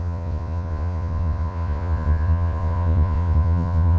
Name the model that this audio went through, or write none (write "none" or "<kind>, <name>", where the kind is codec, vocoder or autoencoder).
vocoder, Vocos